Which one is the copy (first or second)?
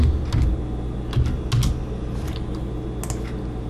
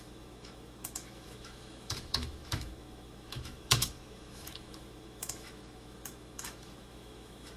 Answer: second